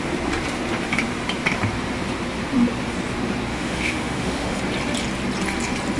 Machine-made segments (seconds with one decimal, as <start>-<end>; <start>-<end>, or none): 3.5-4.6